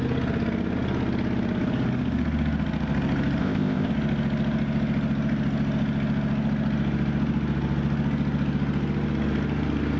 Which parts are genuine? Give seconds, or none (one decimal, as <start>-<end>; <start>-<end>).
0.0-3.4; 3.9-10.0